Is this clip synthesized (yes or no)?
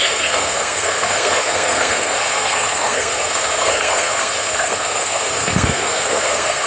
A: yes